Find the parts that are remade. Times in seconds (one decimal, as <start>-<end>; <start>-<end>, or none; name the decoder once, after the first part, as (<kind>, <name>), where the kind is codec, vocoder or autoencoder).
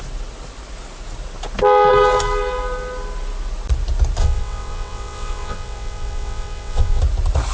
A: 4.2-7.0 (vocoder, WaveNeXt)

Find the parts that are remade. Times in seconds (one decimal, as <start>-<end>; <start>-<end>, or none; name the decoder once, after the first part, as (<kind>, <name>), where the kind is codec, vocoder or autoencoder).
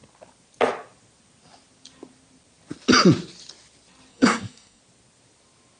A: 4.1-4.8 (codec, SNAC)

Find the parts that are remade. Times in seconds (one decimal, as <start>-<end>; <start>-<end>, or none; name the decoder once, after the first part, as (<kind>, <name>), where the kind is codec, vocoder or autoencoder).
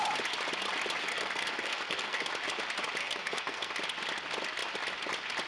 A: 1.1-2.3 (codec, SNAC); 3.0-3.7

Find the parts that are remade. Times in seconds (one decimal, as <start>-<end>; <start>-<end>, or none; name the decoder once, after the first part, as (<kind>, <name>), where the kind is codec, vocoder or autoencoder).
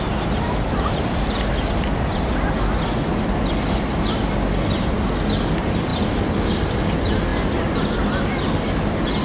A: none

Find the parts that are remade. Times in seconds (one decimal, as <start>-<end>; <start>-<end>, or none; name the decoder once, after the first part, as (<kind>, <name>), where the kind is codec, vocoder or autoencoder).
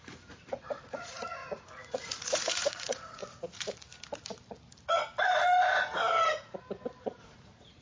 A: 0.0-3.2 (vocoder, Vocos); 7.0-7.8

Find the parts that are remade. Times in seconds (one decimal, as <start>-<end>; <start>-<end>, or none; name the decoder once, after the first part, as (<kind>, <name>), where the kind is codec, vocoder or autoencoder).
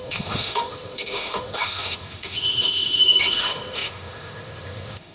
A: 0.0-5.1 (autoencoder, DAC-VAE)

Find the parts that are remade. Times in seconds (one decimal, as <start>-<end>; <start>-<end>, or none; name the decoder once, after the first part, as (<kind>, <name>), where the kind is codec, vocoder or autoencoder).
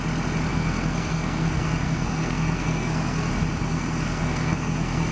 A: 0.5-3.3 (codec, SNAC); 3.7-5.1